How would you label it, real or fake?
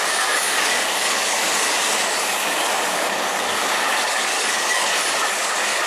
fake